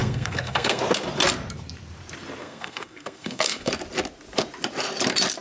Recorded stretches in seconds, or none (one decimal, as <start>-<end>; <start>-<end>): 0.8-2.4; 3.7-5.4

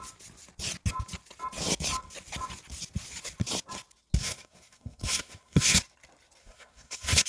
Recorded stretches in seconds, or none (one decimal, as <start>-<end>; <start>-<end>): 0.0-4.2; 5.8-6.4

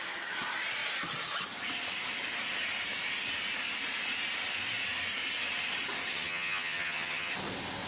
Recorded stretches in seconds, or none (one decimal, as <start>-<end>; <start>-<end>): 0.0-6.1; 7.3-7.9

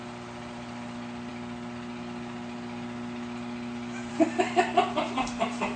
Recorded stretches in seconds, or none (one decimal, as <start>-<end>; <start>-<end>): 0.0-5.8

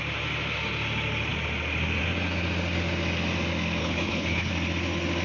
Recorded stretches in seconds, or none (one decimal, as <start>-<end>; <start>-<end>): 0.0-3.8; 4.5-5.2

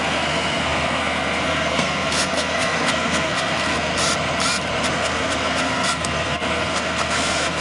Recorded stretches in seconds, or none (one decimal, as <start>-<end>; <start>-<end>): 3.9-4.9

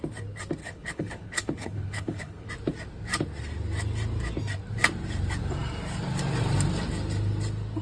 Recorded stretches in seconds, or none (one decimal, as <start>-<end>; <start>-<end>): 0.0-0.6; 2.5-7.8